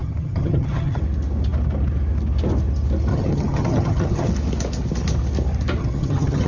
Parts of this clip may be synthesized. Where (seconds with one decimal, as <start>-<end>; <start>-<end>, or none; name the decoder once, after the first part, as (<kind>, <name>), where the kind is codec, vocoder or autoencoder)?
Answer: 0.0-1.0 (vocoder, HiFi-GAN); 3.1-4.3; 5.8-6.5